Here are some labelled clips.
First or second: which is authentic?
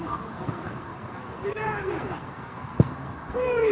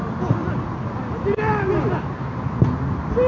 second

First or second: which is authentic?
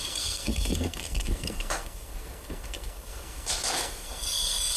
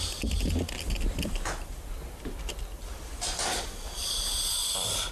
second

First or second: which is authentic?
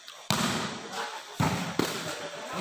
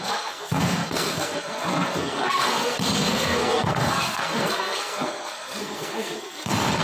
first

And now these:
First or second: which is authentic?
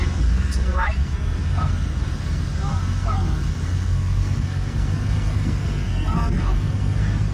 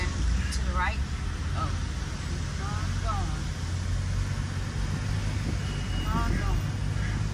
second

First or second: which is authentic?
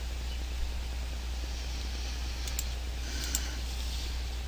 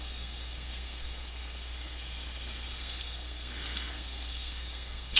first